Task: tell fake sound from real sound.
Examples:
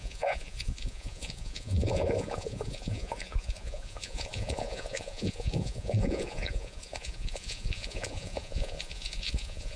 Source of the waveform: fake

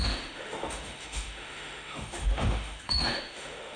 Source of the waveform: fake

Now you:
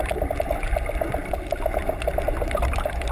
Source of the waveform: real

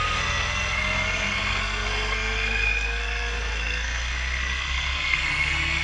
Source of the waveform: fake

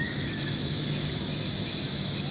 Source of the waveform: fake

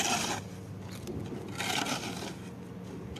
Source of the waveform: real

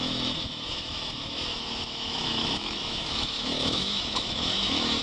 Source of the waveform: fake